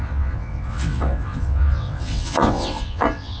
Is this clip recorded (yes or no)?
no